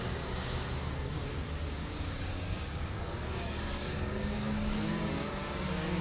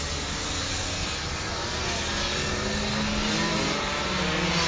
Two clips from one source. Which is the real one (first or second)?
second